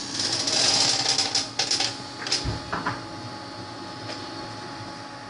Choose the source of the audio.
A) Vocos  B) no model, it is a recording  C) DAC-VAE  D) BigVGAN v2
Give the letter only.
B